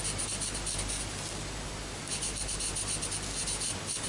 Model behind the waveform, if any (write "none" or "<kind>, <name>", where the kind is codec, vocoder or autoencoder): none